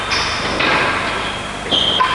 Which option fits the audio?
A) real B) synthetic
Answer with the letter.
A